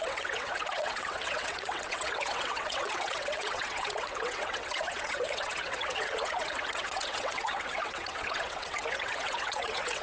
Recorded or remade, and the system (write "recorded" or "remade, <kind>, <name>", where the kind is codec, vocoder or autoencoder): remade, vocoder, WaveNeXt